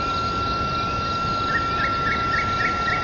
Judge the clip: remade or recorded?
recorded